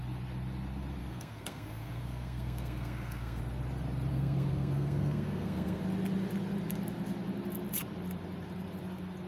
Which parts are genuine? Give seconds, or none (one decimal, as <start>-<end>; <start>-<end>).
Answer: 0.0-1.0; 3.4-4.1; 5.8-9.3